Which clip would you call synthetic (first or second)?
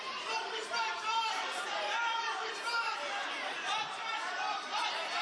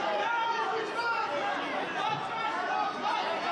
first